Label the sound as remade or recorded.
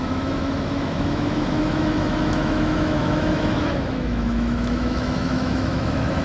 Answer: remade